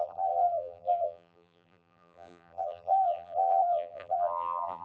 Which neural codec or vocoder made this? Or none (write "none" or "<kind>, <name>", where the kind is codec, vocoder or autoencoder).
vocoder, BigVGAN v2